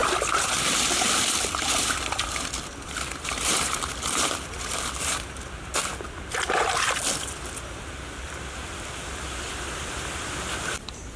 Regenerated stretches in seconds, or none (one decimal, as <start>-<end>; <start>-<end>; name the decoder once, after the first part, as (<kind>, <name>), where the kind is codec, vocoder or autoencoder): 0.0-11.2 (vocoder, BigVGAN v2)